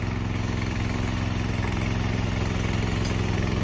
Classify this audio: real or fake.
real